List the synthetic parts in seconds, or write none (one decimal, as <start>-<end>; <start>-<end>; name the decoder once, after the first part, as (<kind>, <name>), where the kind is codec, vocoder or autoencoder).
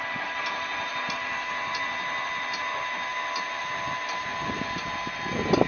none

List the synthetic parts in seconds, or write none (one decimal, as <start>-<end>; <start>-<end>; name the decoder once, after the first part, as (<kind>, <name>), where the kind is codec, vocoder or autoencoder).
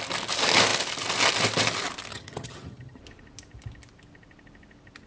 2.1-3.0 (vocoder, HiFi-GAN)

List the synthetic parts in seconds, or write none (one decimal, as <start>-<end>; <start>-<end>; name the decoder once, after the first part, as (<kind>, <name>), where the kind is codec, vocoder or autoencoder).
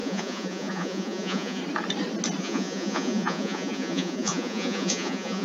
0.0-1.6 (vocoder, Vocos); 2.4-5.4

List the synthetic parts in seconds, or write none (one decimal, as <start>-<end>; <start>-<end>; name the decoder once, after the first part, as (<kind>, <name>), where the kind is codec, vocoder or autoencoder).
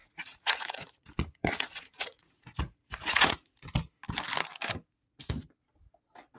0.0-3.3 (vocoder, Vocos)